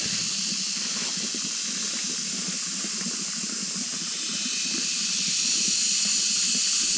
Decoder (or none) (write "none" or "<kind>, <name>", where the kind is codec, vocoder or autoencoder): none